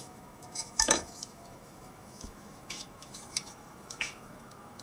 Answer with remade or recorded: remade